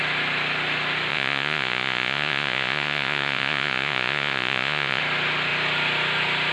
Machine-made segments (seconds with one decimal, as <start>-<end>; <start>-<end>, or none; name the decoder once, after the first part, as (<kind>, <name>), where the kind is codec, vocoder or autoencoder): 1.1-5.0 (vocoder, Vocos)